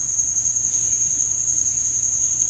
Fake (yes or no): yes